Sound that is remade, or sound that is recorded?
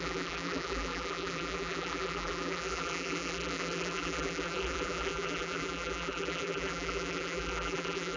remade